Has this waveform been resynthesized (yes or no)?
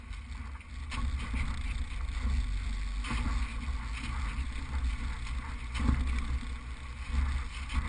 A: no